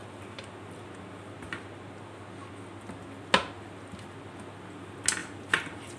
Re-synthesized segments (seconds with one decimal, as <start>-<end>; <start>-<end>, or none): none